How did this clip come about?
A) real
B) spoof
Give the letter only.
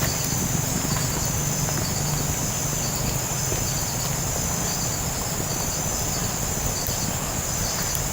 A